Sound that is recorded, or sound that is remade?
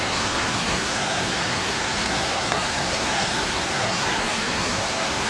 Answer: remade